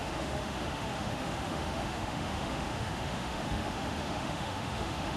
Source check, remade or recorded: remade